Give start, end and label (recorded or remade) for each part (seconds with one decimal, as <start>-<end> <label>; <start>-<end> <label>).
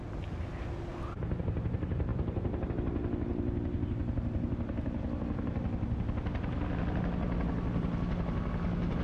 0.0-2.1 recorded; 2.1-2.7 remade; 2.7-9.0 recorded